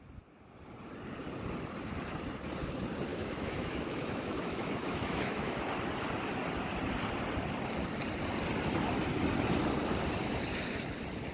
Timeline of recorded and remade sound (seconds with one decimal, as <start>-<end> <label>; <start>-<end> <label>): 0.0-3.1 recorded; 3.1-5.6 remade; 5.6-11.3 recorded